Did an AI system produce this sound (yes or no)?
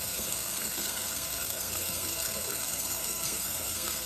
yes